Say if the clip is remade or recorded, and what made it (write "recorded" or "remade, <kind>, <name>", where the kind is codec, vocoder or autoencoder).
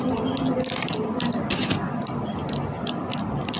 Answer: recorded